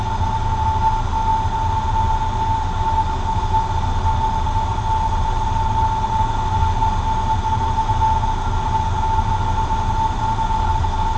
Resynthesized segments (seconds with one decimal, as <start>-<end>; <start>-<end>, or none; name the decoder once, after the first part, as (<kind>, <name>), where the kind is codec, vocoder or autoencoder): none